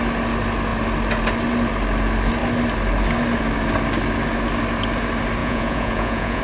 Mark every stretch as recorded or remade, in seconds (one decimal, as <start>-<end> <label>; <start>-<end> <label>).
0.0-5.4 recorded; 5.4-6.4 remade